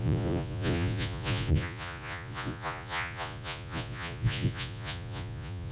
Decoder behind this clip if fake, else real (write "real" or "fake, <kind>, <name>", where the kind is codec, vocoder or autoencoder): fake, vocoder, Vocos